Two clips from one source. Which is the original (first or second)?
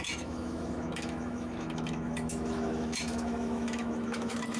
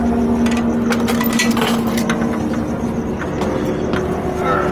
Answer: second